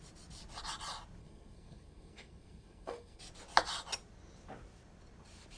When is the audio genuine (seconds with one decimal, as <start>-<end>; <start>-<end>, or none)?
0.0-1.2; 3.2-5.6